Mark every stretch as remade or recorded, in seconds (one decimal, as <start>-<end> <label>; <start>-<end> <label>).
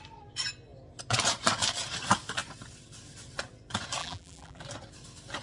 0.0-4.0 recorded; 4.0-4.6 remade; 4.6-5.4 recorded